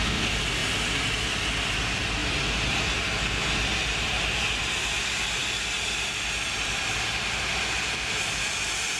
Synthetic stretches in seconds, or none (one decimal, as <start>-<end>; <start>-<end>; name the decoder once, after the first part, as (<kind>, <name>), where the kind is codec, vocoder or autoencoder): none

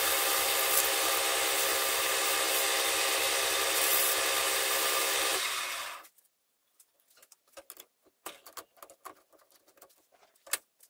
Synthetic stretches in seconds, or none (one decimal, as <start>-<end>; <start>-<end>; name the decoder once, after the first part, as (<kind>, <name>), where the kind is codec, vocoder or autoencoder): none

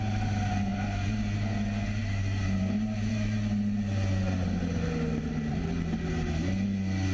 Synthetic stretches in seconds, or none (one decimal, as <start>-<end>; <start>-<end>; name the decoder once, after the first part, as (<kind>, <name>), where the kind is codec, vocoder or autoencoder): none

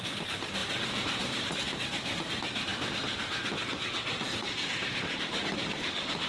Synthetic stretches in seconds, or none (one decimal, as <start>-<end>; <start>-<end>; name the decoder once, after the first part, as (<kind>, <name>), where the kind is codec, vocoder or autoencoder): 4.1-6.3 (vocoder, BigVGAN v2)

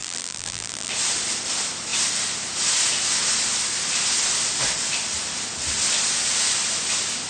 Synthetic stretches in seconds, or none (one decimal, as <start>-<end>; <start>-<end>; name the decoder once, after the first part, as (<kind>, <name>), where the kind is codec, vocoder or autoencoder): 0.0-0.9 (vocoder, BigVGAN v2)

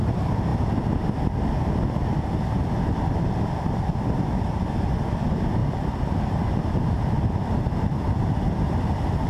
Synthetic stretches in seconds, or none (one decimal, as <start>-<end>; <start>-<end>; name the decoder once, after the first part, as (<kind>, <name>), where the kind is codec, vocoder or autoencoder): 5.6-8.8 (vocoder, BigVGAN v2)